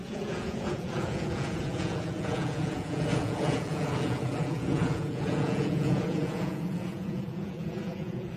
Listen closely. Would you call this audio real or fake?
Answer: fake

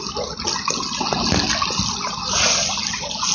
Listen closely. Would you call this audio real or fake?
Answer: real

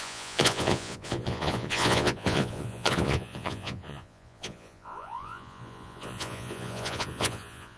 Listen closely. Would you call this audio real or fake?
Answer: fake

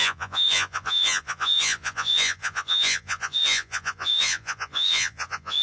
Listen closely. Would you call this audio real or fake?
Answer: fake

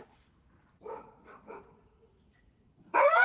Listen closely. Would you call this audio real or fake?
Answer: fake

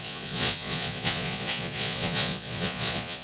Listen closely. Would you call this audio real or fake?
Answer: fake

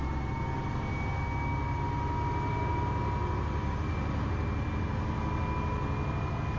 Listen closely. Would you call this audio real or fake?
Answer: real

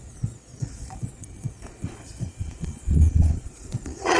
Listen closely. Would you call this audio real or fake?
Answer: fake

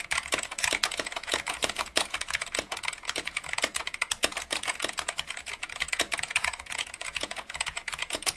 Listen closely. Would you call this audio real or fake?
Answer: fake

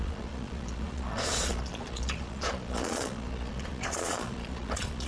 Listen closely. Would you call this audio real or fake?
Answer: fake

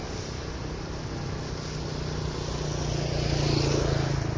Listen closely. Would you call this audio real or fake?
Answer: real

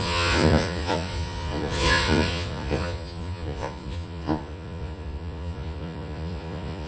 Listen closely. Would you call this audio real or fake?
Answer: fake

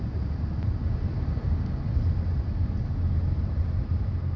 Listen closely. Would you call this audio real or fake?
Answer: real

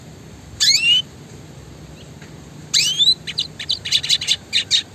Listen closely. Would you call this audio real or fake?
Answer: real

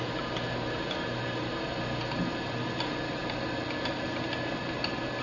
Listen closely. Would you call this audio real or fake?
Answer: real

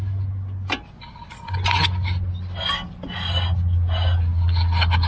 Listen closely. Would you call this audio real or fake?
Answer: real